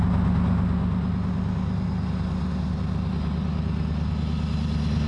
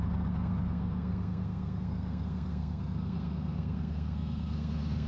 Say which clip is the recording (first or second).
first